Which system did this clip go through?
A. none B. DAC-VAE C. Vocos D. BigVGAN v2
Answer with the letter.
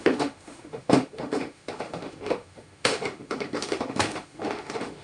B